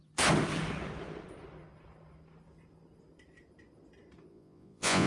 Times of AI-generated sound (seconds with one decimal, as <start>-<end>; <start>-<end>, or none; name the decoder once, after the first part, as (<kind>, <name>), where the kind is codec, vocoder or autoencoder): 4.3-5.1 (vocoder, Vocos)